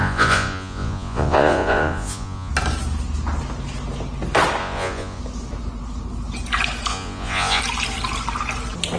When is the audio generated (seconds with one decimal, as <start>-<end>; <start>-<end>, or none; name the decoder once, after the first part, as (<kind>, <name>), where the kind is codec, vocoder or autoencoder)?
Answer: 0.0-2.5 (vocoder, Vocos); 4.6-5.2; 6.9-7.6